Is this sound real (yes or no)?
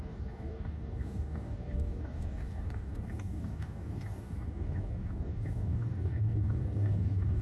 no